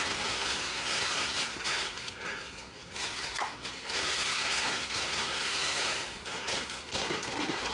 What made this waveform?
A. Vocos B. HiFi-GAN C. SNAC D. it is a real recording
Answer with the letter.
C